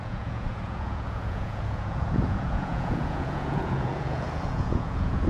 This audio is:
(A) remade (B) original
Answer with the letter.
A